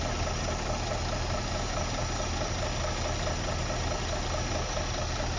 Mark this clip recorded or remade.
recorded